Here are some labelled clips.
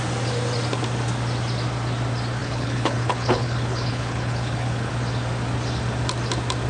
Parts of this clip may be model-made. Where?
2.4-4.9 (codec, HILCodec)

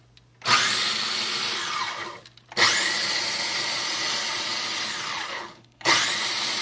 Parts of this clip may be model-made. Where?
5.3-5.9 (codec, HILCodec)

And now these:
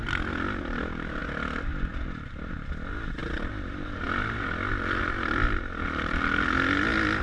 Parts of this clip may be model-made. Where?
none

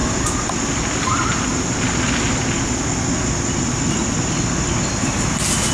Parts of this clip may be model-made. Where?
none

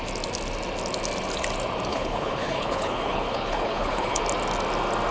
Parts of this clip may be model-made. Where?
1.9-4.2 (codec, HILCodec)